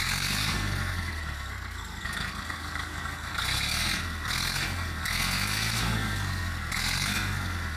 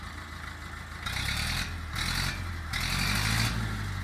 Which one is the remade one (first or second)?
first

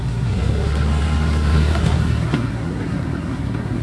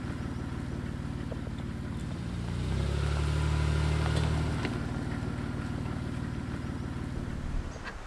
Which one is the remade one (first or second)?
first